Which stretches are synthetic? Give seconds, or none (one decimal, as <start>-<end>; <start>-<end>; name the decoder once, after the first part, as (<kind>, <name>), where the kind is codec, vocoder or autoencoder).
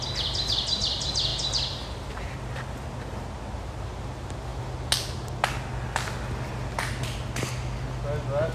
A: none